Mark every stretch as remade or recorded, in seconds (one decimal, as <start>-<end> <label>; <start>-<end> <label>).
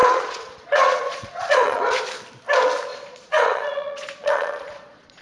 0.0-1.8 remade; 1.8-2.9 recorded; 2.9-5.2 remade